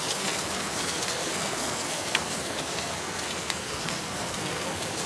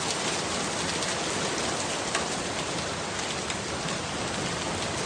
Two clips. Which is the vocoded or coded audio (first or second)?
first